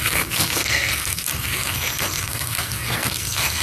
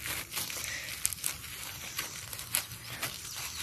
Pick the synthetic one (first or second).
first